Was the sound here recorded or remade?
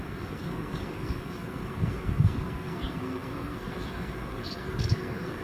remade